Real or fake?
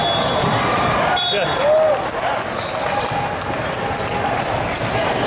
real